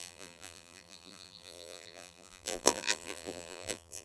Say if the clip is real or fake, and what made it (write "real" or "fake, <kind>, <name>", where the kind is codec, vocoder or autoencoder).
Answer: fake, vocoder, BigVGAN v2